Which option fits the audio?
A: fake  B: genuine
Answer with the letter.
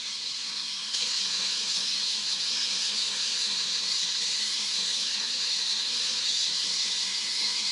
A